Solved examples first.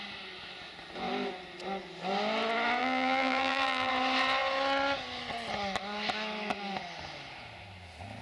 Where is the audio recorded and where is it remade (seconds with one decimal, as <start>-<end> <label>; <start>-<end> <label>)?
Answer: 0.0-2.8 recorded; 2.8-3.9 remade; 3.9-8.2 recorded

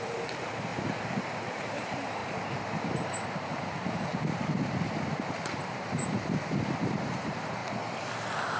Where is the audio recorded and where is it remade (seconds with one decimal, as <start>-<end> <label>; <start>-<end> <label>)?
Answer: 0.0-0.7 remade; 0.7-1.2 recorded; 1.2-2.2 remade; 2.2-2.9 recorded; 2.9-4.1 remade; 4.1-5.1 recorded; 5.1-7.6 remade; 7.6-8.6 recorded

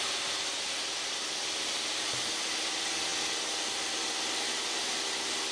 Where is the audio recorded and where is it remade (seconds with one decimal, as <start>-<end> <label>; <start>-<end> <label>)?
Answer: 0.0-5.5 recorded